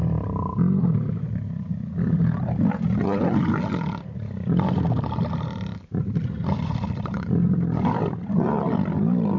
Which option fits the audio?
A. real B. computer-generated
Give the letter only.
A